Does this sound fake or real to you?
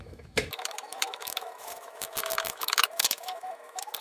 fake